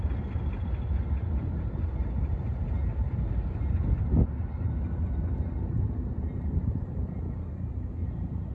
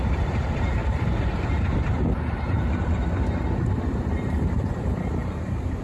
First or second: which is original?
first